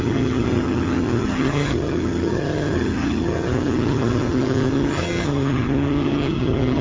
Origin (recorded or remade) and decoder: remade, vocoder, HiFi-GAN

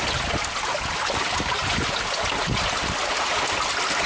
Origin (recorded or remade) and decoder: recorded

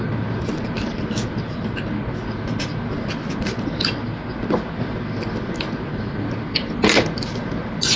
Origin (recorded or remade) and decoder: recorded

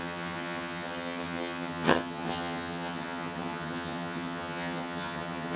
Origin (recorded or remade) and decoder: remade, vocoder, HiFi-GAN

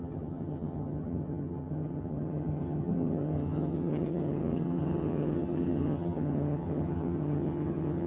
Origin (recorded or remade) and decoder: remade, vocoder, HiFi-GAN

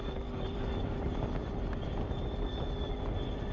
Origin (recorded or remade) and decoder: recorded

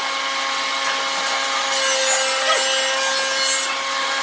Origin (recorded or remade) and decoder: recorded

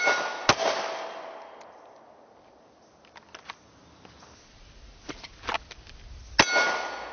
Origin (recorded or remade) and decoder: recorded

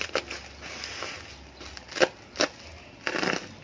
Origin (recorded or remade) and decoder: recorded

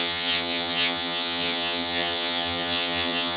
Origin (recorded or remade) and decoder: remade, vocoder, HiFi-GAN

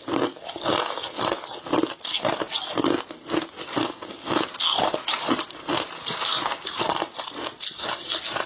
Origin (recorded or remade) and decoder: recorded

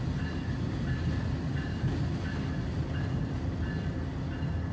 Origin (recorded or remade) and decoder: recorded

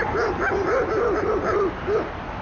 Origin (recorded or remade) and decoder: recorded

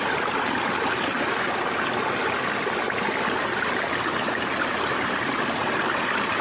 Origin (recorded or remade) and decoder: recorded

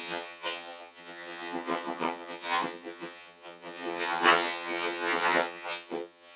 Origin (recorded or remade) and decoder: remade, vocoder, HiFi-GAN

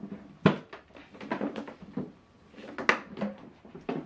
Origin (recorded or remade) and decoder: recorded